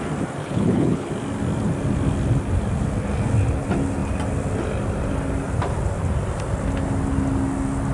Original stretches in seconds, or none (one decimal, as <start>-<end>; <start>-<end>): 0.0-0.4; 1.1-7.9